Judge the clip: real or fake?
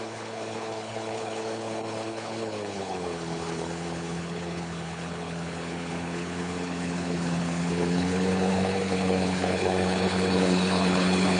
fake